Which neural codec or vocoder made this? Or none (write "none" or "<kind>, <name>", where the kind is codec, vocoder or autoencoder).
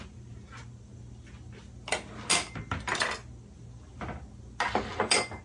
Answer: none